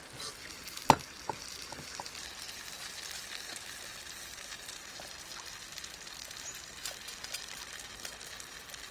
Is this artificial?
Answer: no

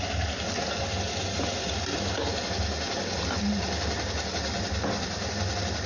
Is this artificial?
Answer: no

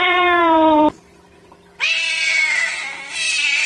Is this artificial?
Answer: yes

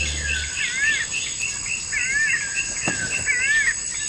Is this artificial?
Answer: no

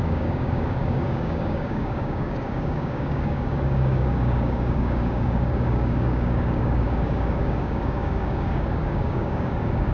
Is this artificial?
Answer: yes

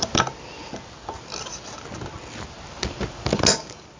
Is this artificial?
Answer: no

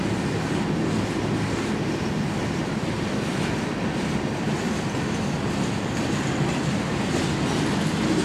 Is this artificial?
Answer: no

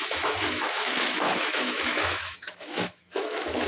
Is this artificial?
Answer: yes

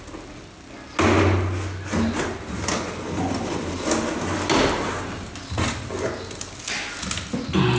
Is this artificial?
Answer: no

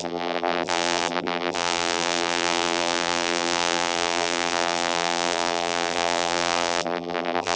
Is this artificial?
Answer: yes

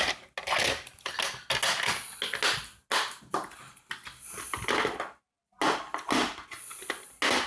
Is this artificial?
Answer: no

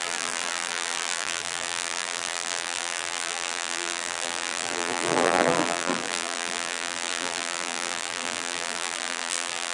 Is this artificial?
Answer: yes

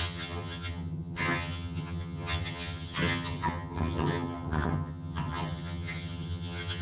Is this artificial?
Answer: yes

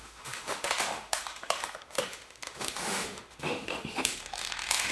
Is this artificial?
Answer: yes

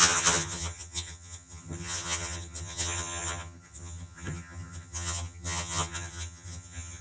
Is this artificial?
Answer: yes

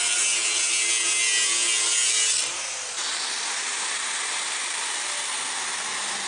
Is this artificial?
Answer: no